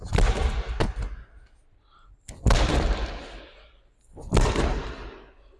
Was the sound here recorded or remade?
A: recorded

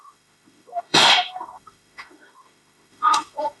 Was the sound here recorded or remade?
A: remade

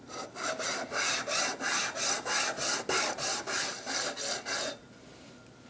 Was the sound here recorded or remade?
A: recorded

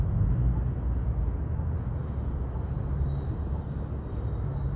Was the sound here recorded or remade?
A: recorded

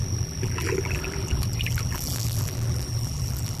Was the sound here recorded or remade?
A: remade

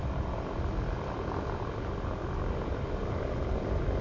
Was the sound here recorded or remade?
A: recorded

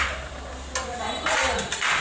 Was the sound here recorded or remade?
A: recorded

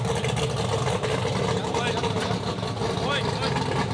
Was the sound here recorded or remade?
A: recorded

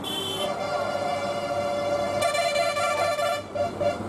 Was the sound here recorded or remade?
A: recorded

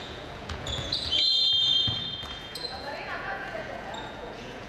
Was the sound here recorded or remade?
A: remade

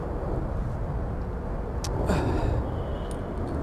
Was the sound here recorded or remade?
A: recorded